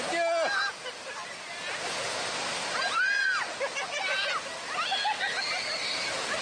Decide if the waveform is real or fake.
real